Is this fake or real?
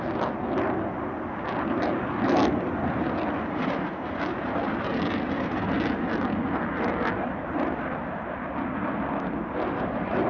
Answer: real